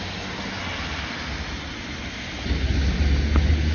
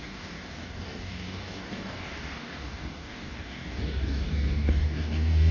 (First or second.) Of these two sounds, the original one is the first